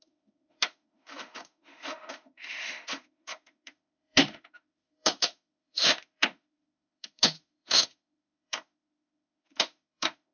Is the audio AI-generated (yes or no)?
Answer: yes